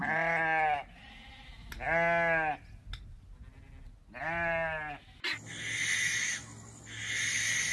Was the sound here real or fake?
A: real